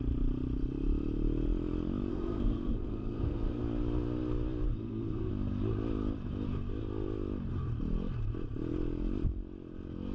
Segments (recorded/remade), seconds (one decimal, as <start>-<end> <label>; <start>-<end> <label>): 0.0-2.1 recorded; 2.1-3.6 remade; 3.6-4.7 recorded; 4.7-5.3 remade; 5.3-10.1 recorded